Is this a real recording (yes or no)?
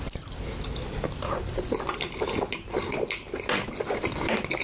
no